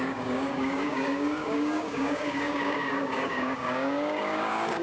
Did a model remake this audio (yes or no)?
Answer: yes